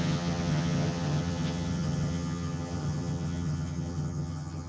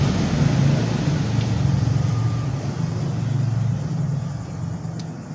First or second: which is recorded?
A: second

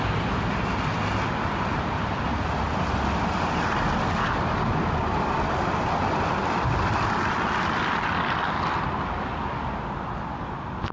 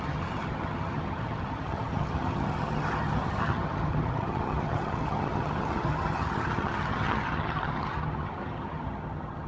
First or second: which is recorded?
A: first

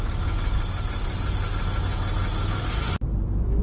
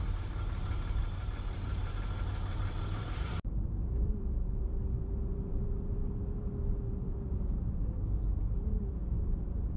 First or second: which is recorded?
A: first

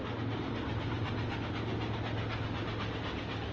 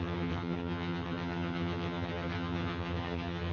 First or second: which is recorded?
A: first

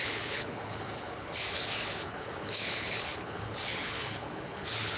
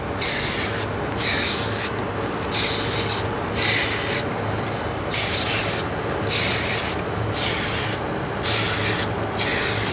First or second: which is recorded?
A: second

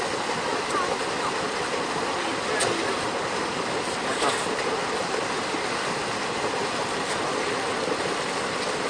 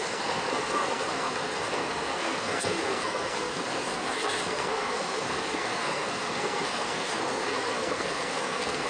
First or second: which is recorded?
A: first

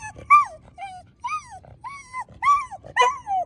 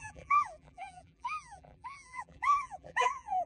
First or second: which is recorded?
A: first